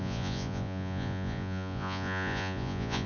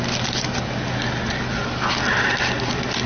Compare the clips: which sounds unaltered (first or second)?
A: second